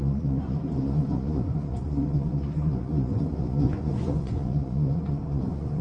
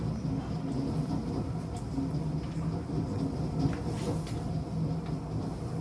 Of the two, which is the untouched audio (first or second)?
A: second